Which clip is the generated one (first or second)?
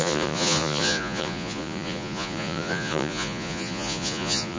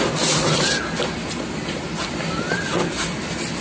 first